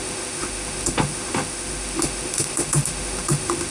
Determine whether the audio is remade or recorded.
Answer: remade